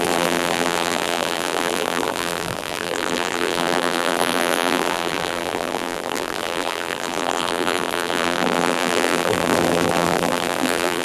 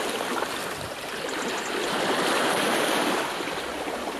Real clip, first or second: second